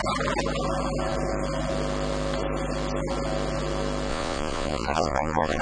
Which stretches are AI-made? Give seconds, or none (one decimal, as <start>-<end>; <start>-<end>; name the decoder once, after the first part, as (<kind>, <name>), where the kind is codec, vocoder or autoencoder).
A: 4.1-5.6 (vocoder, Vocos)